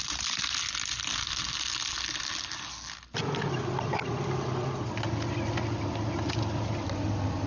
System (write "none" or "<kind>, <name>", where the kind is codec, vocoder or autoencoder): none